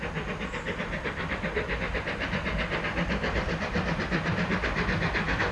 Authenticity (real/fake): real